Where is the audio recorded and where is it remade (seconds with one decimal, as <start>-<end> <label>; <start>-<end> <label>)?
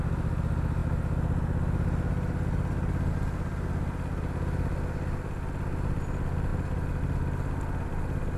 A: 0.0-8.4 recorded